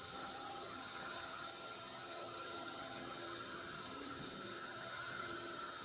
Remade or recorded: remade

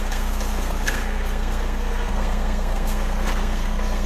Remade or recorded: remade